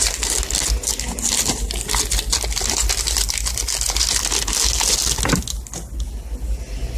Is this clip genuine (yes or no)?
yes